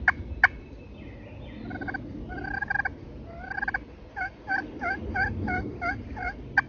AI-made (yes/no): no